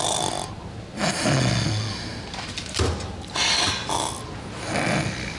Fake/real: real